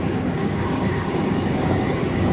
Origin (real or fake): fake